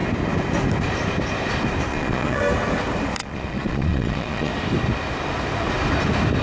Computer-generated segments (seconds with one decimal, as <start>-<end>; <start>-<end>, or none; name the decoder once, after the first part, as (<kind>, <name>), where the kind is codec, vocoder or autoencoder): 1.9-2.4 (vocoder, Vocos); 3.2-4.5